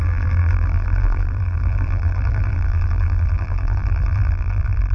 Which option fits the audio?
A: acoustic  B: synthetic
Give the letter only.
B